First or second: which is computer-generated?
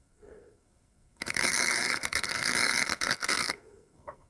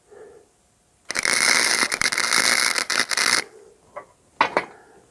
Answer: first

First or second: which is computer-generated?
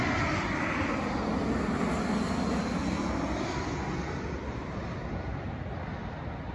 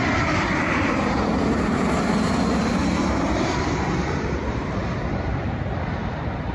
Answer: second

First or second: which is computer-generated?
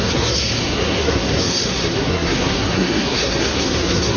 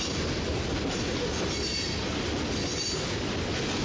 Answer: first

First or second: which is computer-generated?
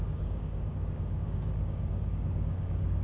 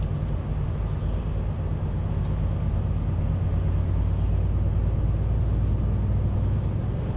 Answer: first